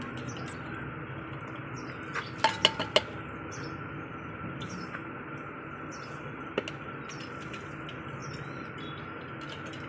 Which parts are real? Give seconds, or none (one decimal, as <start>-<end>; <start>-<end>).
0.0-9.9